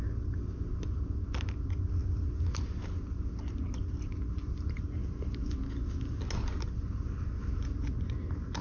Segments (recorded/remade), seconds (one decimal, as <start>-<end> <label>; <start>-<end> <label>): 0.0-8.6 recorded